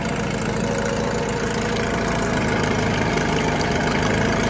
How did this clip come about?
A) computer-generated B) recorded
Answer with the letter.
B